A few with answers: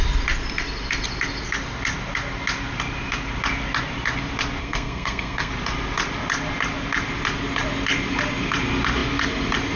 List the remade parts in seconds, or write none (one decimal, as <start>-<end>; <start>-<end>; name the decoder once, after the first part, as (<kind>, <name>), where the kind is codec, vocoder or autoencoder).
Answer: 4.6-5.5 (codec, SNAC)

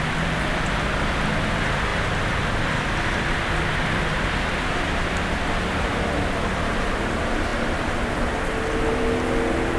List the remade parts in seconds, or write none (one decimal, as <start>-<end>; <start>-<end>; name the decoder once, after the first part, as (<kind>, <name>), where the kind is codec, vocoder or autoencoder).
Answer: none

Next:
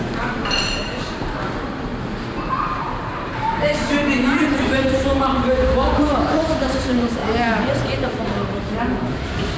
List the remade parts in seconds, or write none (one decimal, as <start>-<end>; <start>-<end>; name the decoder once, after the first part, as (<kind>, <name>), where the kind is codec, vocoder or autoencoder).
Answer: 0.0-1.9 (vocoder, BigVGAN v2); 2.5-7.2; 8.2-9.6

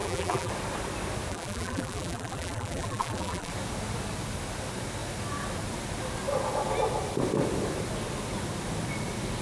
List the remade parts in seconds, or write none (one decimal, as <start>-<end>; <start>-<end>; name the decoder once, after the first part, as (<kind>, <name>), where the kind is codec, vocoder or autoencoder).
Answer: 0.0-0.5 (vocoder, BigVGAN v2); 1.3-3.5

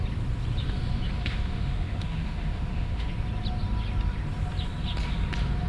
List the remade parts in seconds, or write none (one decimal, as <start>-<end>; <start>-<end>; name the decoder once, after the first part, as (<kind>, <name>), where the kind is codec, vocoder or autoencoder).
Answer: 1.2-3.1 (autoencoder, DAC-VAE)

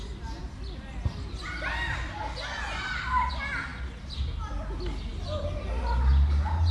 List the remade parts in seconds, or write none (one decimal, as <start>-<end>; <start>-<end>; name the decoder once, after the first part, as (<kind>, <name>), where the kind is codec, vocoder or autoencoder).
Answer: none

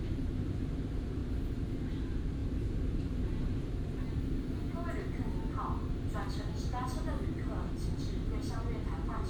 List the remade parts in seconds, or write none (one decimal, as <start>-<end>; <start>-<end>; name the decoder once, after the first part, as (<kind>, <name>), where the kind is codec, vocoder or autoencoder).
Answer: 0.0-1.2 (vocoder, BigVGAN v2); 1.9-4.7; 6.4-9.3